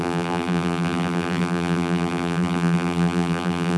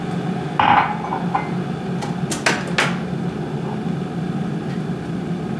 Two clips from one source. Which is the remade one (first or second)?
first